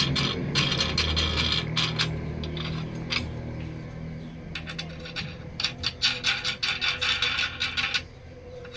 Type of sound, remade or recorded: recorded